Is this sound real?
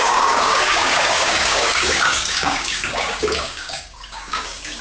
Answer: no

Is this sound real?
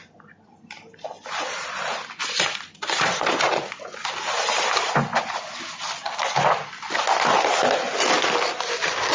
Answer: yes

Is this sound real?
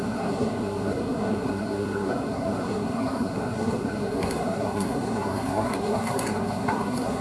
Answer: no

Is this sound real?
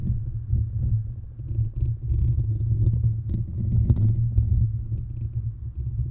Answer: yes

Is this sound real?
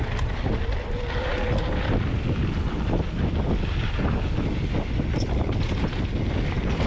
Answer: yes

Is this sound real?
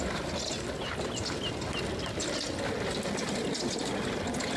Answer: yes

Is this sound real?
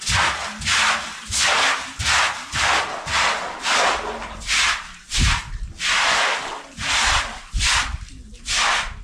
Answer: yes